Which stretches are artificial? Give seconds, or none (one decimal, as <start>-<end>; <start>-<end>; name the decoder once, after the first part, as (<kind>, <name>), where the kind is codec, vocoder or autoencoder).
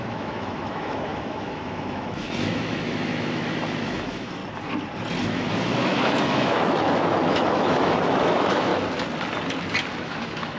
0.0-4.4 (autoencoder, DAC-VAE); 5.2-8.7; 10.0-10.6